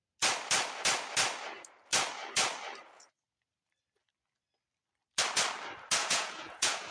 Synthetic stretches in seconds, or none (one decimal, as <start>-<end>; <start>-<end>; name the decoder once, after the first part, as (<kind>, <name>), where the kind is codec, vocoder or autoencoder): 6.0-6.9 (vocoder, Vocos)